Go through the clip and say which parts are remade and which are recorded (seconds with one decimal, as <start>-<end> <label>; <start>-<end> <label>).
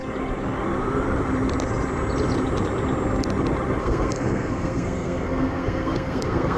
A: 0.0-3.8 recorded; 3.8-6.6 remade